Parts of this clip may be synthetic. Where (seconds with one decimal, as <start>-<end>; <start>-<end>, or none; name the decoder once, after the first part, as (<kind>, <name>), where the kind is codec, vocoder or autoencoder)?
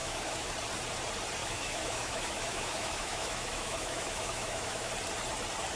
0.0-0.5 (autoencoder, DAC-VAE); 1.4-4.9